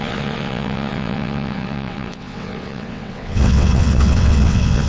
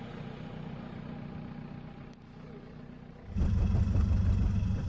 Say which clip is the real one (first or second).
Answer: second